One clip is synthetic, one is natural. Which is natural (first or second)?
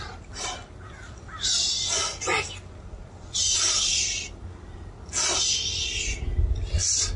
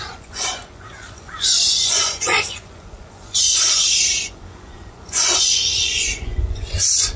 first